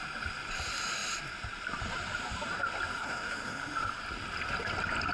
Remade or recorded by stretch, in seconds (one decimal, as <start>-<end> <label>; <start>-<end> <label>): 0.0-3.0 recorded; 3.0-3.6 remade; 3.6-5.1 recorded